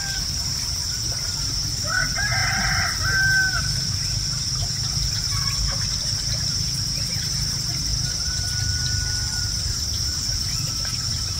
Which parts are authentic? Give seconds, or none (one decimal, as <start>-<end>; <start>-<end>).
2.4-3.6; 7.9-9.4